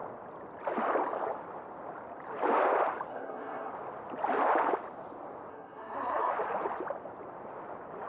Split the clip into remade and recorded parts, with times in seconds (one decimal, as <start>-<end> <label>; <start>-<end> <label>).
0.0-3.1 recorded; 3.1-3.7 remade; 3.7-5.5 recorded; 5.5-6.3 remade; 6.3-8.1 recorded